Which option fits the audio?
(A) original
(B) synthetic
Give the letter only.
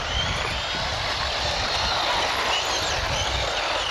A